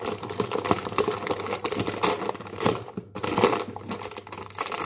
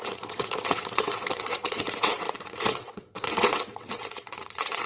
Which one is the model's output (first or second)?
second